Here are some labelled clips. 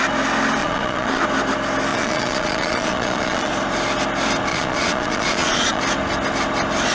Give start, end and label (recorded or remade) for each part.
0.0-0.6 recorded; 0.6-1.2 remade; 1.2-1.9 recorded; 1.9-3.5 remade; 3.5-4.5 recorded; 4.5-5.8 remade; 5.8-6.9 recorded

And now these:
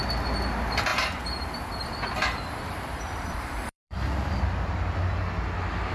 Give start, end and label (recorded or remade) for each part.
0.0-0.9 recorded; 0.9-4.4 remade; 4.4-5.9 recorded

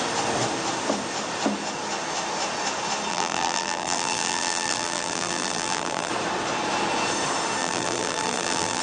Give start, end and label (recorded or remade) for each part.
0.0-3.1 recorded; 3.1-6.1 remade; 6.1-7.6 recorded; 7.6-8.8 remade